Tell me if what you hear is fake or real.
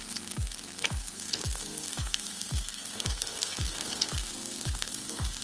fake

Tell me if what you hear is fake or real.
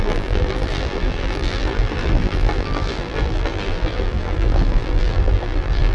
fake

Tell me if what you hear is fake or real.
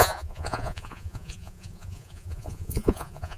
fake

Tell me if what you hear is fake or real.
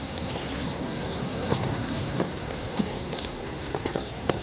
fake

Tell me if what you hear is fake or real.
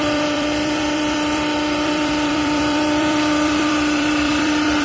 fake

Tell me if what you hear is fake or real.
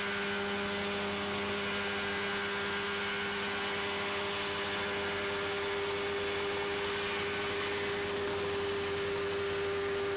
real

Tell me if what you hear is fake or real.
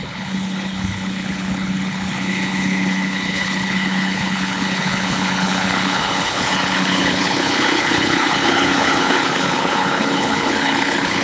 fake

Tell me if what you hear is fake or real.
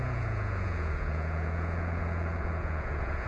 fake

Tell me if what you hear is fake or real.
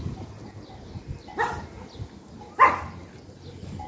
real